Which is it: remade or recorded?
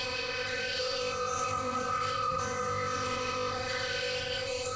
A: remade